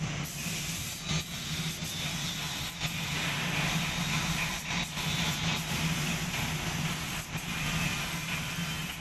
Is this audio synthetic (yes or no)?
no